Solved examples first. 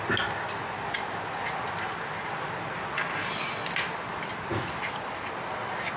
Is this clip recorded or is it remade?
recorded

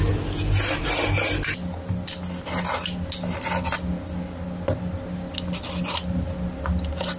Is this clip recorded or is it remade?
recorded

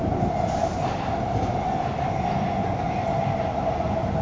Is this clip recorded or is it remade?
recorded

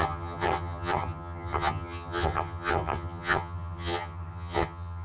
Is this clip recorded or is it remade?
remade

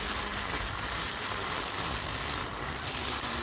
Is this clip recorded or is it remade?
recorded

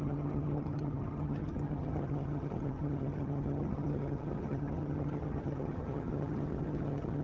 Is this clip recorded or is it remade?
remade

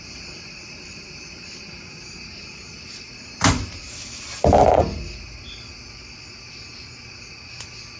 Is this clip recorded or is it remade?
recorded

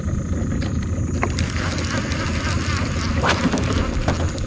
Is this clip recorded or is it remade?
recorded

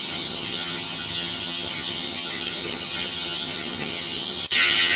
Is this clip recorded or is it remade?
remade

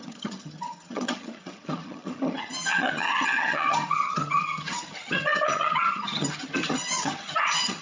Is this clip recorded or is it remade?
remade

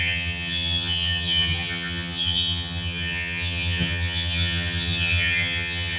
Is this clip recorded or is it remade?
remade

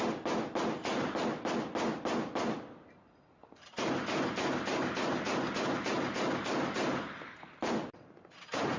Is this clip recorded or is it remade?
recorded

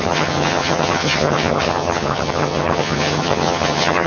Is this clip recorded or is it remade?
remade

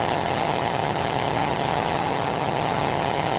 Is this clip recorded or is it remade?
remade